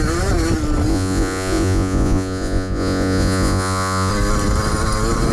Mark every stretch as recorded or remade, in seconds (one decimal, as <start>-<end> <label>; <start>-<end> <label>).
0.0-0.9 recorded; 0.9-4.1 remade; 4.1-5.3 recorded